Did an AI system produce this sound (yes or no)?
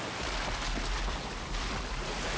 no